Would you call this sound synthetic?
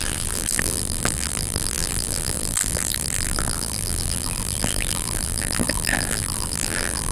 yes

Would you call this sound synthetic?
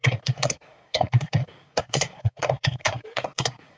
yes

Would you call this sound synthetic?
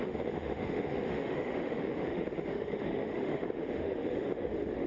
yes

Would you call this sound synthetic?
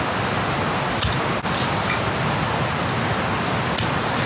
no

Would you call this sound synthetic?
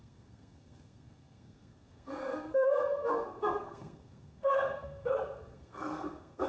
yes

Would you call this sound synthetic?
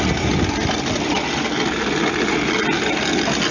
no